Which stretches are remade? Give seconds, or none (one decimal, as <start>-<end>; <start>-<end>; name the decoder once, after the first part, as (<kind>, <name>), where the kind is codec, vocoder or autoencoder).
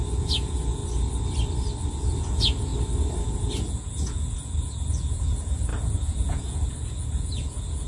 0.0-0.8 (vocoder, Vocos); 2.2-2.7; 3.2-7.9